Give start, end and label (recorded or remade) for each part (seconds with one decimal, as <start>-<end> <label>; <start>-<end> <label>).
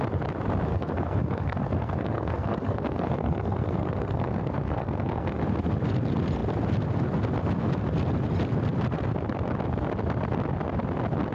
0.0-0.7 recorded; 0.7-5.4 remade; 5.4-11.3 recorded